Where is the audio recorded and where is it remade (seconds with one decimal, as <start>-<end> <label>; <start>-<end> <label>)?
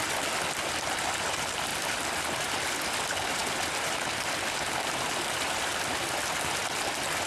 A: 0.0-7.3 recorded